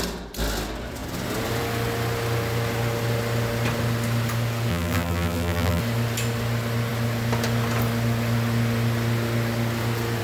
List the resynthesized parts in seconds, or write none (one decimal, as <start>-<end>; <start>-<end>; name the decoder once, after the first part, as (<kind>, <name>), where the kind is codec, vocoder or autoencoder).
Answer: 4.7-5.8 (vocoder, BigVGAN v2)